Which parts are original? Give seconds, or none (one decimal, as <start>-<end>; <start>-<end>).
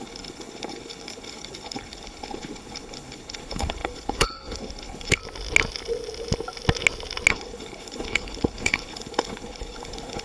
5.2-7.3